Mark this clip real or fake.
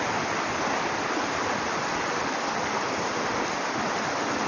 real